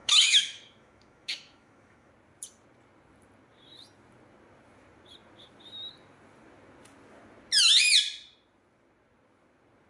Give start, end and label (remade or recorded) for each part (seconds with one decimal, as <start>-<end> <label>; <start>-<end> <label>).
0.0-2.1 remade; 2.1-9.9 recorded